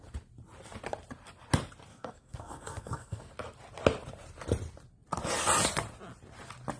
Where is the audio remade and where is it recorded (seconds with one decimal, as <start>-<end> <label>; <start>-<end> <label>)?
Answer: 0.0-1.9 recorded; 1.9-3.3 remade; 3.3-6.8 recorded